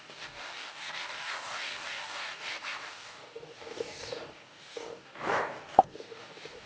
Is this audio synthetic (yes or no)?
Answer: yes